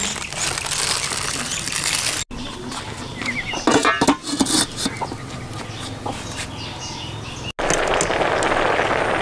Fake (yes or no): no